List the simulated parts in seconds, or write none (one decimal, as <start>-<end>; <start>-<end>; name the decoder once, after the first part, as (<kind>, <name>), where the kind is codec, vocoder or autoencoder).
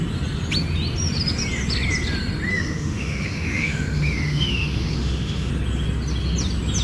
2.5-5.5 (autoencoder, DAC-VAE)